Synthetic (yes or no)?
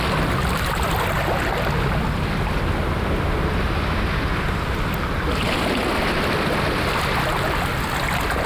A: no